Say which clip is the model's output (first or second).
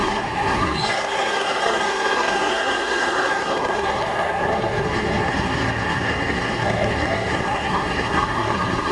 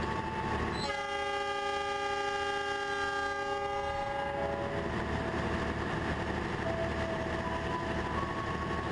first